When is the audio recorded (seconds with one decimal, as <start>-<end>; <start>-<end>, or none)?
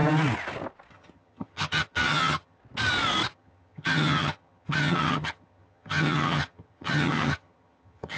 0.0-0.9; 2.6-3.3